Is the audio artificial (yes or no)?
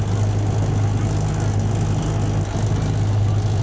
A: no